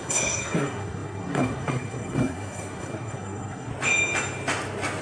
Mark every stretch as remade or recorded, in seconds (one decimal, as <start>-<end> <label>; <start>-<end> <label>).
0.0-3.7 remade; 3.7-5.0 recorded